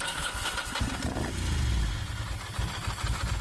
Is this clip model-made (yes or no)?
no